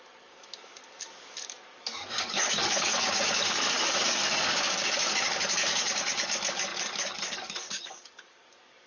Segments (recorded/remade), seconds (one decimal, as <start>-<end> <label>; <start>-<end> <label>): 0.0-8.9 remade